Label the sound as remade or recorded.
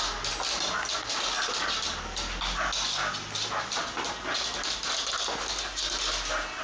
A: recorded